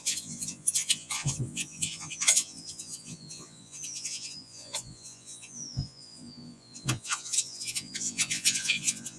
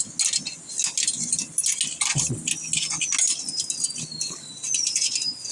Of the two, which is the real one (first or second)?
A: second